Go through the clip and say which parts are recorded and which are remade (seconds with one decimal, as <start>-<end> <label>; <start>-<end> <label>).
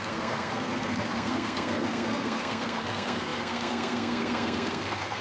0.0-5.2 remade